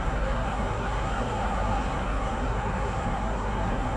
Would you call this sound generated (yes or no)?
yes